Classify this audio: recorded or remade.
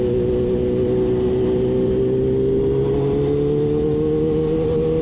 recorded